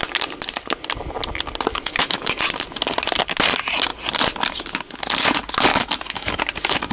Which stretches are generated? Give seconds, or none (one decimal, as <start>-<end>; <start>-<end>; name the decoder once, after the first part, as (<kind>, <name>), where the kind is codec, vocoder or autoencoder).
1.7-2.4 (autoencoder, DAC-VAE); 5.7-6.4